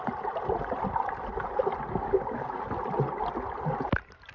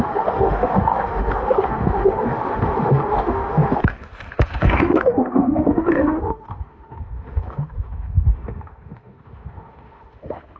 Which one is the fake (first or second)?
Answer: second